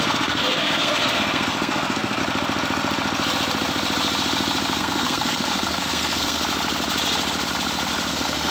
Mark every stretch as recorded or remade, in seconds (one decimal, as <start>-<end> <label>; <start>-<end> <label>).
0.0-2.2 remade; 2.2-4.8 recorded; 4.8-6.4 remade; 6.4-8.1 recorded; 8.1-8.5 remade